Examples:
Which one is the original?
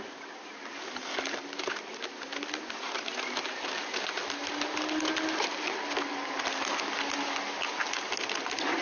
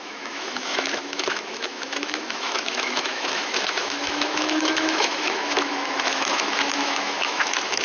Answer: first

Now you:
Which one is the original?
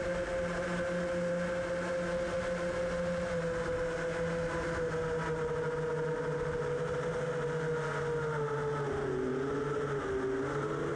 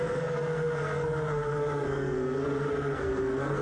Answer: first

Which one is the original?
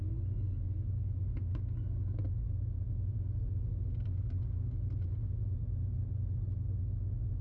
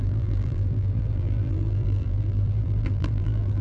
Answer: first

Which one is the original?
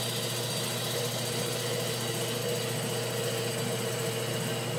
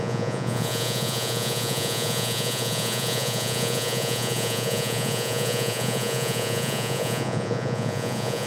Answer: first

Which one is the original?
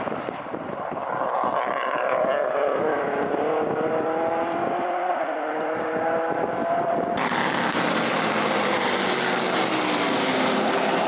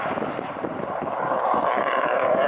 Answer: first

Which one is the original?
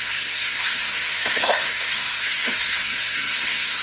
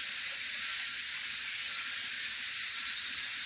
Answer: second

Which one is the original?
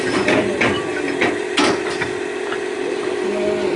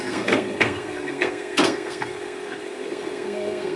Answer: first